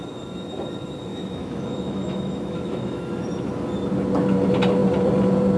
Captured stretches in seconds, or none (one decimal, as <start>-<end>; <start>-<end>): 0.0-1.1; 3.1-5.6